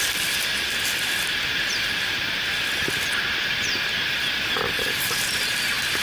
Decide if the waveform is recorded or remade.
recorded